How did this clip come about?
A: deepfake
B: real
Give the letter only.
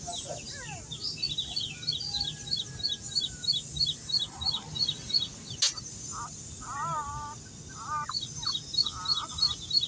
B